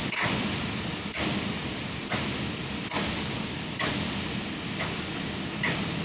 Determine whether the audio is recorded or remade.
recorded